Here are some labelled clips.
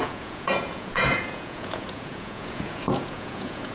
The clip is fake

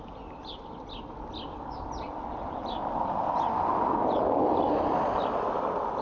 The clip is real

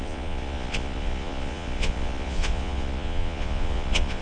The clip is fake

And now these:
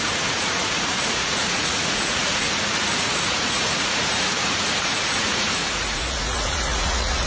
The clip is fake